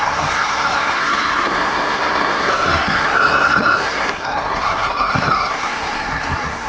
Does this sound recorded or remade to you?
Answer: remade